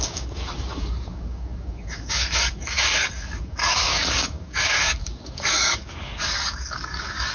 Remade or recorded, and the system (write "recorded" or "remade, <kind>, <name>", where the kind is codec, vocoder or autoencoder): remade, codec, DAC